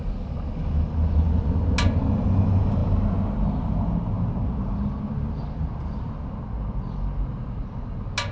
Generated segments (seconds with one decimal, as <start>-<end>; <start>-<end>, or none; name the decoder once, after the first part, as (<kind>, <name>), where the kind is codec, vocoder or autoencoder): none